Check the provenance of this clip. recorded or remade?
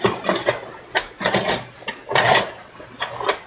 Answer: recorded